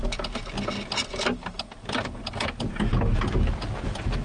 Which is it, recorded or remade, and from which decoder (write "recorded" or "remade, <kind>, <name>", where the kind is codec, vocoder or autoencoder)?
recorded